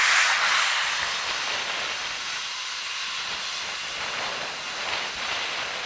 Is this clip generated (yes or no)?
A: no